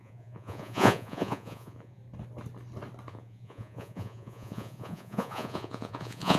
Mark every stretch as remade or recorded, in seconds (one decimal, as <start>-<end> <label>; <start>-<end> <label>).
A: 0.0-2.0 remade; 2.0-3.1 recorded; 3.1-6.4 remade